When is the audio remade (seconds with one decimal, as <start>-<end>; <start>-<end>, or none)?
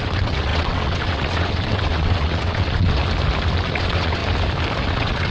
0.0-3.0; 3.7-4.2; 4.8-5.3